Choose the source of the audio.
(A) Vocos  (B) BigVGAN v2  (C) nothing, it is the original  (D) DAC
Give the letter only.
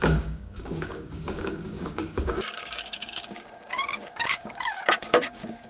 D